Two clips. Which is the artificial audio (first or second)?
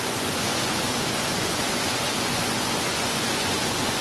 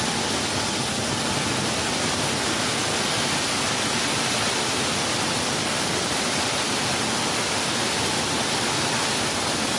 first